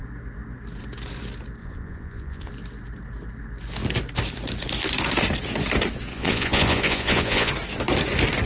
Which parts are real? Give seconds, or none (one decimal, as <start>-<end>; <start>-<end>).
0.0-1.6; 2.5-6.1; 7.5-8.5